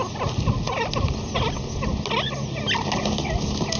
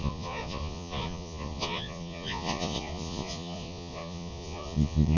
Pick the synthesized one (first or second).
second